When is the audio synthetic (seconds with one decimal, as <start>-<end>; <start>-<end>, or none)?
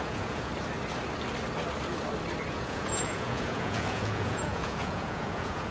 0.0-0.5; 2.5-5.7